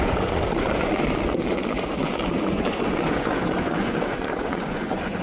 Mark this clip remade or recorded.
remade